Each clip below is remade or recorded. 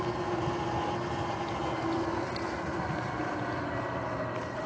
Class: recorded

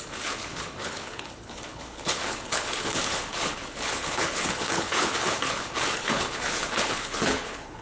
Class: remade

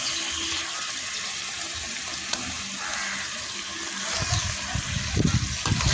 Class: recorded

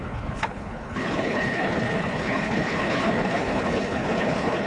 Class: remade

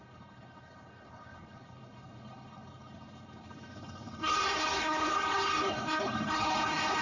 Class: remade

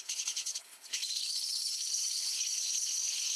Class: remade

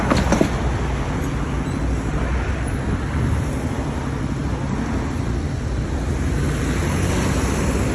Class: recorded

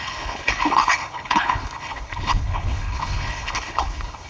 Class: remade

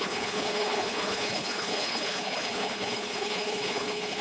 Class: remade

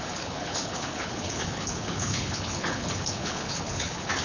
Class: remade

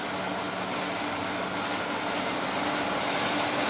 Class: recorded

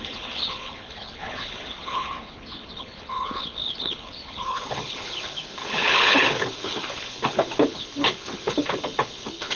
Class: remade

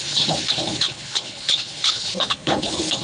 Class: remade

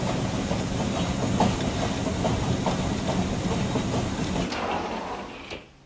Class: recorded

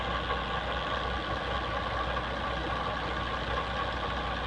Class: recorded